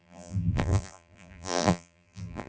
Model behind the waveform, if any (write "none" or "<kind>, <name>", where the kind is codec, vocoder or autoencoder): vocoder, BigVGAN v2